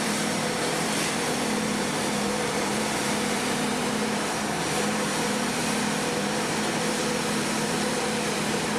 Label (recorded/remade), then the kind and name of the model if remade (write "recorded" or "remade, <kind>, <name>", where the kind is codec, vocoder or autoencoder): remade, vocoder, BigVGAN v2